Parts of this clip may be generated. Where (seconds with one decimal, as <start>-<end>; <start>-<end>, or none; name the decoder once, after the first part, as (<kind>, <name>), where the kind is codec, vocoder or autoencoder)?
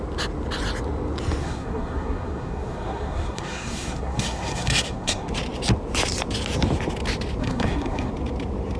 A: 1.4-5.3 (codec, SNAC); 7.4-8.1